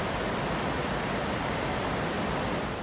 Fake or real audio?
real